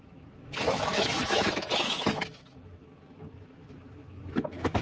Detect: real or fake fake